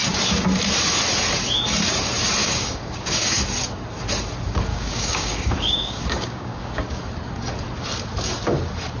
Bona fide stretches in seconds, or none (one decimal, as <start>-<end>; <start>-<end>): 0.0-2.4; 3.4-4.7; 7.0-9.0